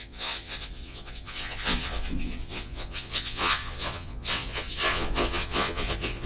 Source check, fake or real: fake